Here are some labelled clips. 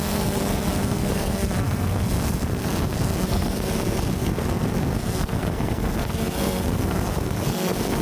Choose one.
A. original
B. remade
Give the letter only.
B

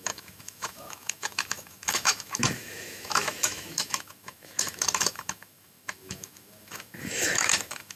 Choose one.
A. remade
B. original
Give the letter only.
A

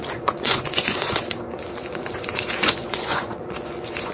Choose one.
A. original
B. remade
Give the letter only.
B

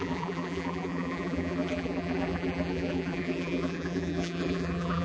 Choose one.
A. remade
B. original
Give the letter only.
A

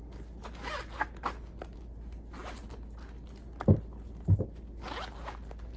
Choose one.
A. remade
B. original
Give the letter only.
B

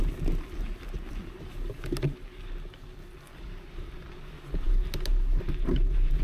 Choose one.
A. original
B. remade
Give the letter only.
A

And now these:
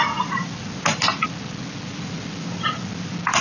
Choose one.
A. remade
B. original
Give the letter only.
B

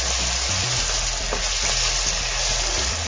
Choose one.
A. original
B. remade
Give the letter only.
A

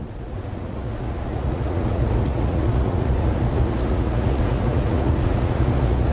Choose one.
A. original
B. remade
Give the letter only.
B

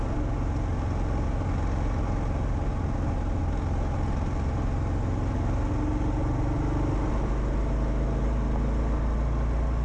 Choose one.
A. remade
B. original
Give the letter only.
B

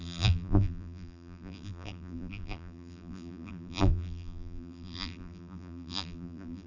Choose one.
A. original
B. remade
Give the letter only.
B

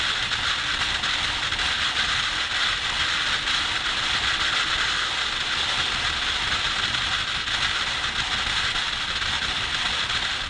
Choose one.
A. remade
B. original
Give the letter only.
B